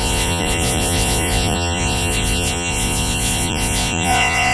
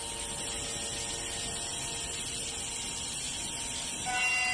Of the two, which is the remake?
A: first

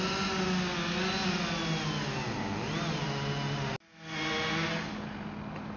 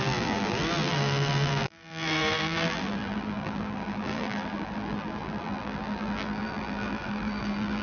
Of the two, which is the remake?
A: second